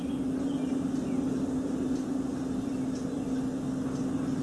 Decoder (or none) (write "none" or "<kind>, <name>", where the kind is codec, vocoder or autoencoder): none